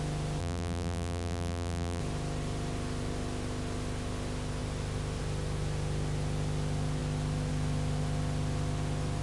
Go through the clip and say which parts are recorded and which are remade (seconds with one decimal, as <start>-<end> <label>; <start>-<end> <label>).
0.0-0.4 recorded; 0.4-2.0 remade; 2.0-9.2 recorded